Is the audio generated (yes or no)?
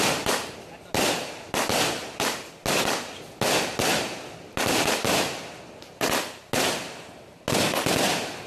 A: no